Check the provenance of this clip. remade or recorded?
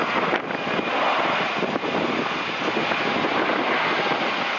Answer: recorded